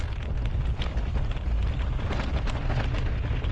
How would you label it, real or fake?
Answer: real